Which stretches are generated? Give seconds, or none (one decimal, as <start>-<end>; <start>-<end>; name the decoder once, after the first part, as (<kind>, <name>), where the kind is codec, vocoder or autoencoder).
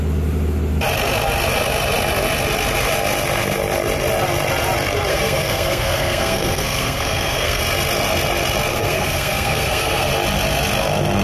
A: 5.1-7.6 (codec, SNAC); 8.7-10.1